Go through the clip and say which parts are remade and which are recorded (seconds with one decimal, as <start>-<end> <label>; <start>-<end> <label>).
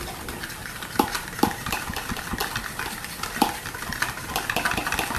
0.0-0.6 recorded; 0.6-1.7 remade; 1.7-5.2 recorded